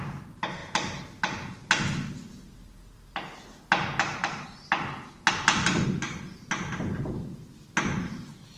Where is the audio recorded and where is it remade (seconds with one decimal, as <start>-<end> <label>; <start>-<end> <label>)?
0.0-8.6 recorded

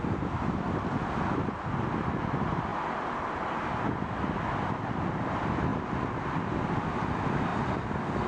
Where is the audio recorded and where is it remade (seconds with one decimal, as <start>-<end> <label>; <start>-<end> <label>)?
0.0-8.3 recorded

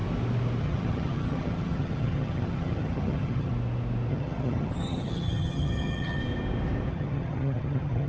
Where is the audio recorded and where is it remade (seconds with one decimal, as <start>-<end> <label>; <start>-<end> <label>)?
0.0-0.6 recorded; 0.6-3.5 remade; 3.5-4.1 recorded; 4.1-6.2 remade; 6.2-6.9 recorded; 6.9-8.1 remade